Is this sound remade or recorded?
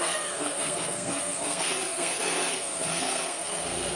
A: remade